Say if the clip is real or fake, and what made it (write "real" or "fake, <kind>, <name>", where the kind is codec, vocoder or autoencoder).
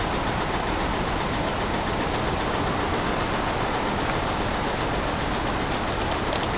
real